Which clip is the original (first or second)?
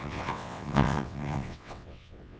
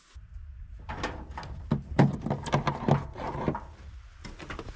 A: second